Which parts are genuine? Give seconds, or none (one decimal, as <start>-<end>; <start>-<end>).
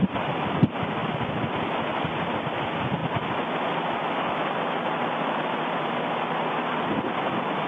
0.0-7.7